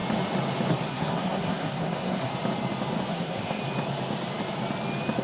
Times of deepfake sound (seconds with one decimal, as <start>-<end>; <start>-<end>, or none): 0.7-2.3; 3.1-3.6